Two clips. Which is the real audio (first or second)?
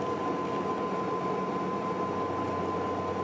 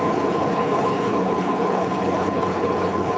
first